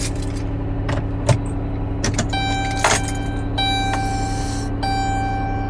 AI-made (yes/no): no